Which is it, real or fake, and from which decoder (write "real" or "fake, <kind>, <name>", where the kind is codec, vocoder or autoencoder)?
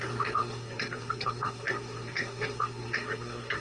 fake, codec, SNAC